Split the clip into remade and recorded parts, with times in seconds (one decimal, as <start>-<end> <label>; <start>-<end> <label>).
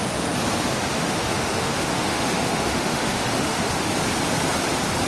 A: 0.0-0.8 recorded; 0.8-3.9 remade; 3.9-5.1 recorded